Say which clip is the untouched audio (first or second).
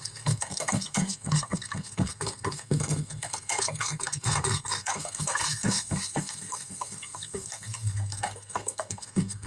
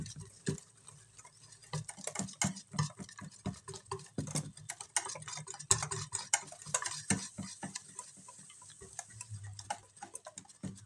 second